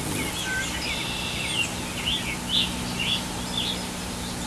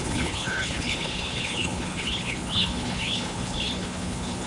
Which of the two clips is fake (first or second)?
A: second